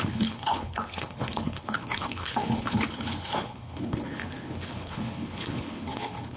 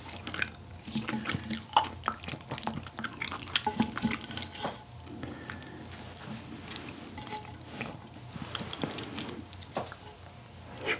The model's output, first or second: first